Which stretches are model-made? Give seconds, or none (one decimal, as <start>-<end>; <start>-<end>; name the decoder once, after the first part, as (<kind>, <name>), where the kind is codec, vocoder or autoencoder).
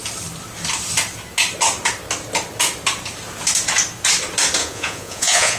4.6-5.6 (vocoder, Vocos)